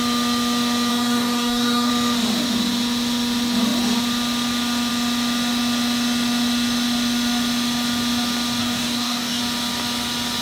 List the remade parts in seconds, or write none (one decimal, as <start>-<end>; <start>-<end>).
0.9-1.9; 8.6-9.4